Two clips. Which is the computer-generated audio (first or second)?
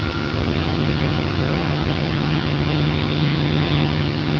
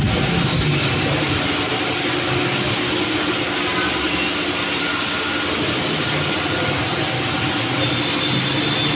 first